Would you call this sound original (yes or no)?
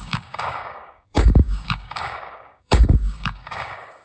no